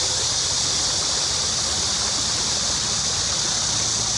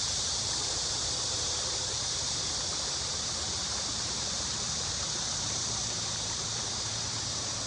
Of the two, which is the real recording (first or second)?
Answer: first